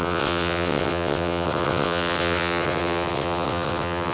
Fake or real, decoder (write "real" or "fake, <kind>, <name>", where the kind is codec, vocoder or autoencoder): fake, vocoder, WaveNeXt